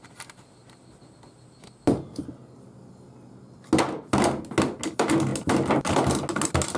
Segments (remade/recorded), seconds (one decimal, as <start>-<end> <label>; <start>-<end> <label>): 0.0-6.8 recorded